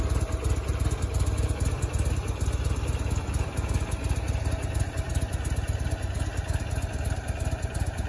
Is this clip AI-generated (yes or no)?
no